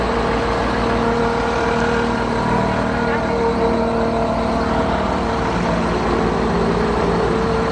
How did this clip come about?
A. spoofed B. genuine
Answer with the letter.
B